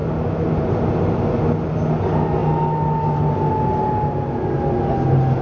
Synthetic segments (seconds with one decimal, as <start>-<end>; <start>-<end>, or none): none